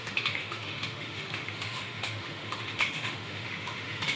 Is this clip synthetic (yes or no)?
yes